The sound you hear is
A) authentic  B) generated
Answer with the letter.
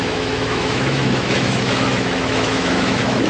B